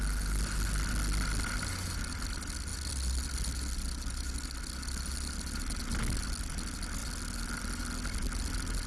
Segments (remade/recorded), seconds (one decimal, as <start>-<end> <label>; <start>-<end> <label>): 0.0-8.9 recorded